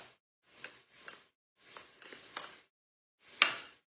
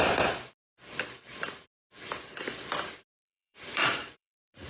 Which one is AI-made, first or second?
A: second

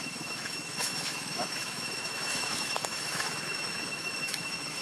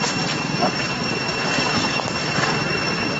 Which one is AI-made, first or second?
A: first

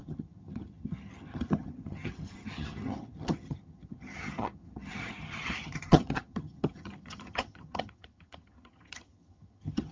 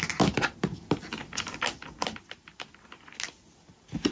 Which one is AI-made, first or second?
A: first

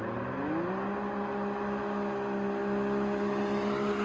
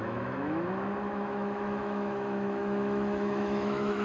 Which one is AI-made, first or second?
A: second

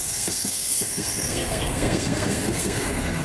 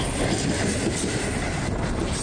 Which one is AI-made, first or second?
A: first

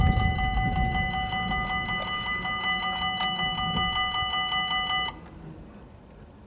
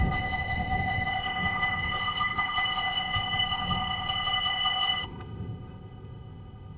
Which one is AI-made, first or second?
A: second